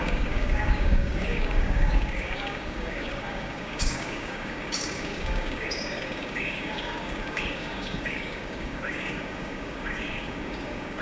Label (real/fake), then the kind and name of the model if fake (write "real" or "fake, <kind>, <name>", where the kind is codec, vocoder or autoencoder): fake, codec, DAC